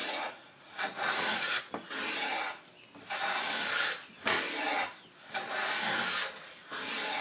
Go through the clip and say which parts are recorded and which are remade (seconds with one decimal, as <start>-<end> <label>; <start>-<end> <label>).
0.0-1.6 remade; 1.6-7.2 recorded